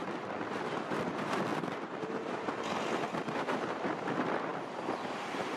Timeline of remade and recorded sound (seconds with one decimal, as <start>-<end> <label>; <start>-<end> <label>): 0.0-5.6 recorded